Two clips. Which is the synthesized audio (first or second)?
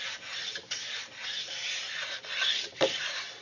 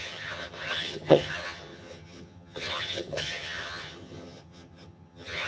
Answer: second